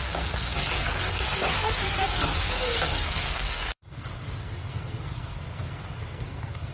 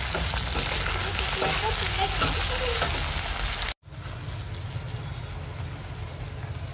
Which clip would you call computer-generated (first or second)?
first